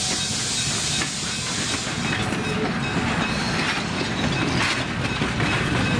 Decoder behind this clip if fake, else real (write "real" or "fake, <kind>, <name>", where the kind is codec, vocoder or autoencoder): real